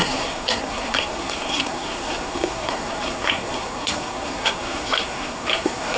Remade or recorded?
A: remade